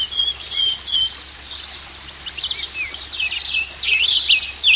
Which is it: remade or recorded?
recorded